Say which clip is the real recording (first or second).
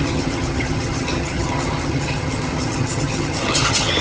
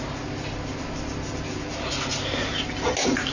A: second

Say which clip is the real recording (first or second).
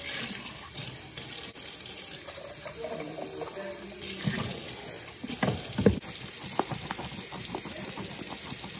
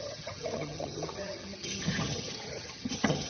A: first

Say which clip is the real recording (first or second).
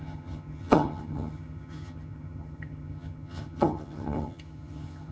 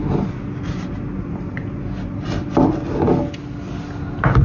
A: second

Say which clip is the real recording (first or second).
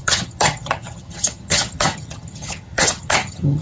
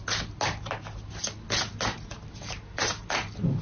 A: second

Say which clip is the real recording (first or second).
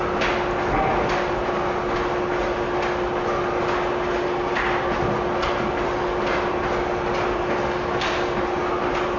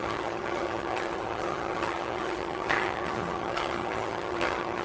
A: first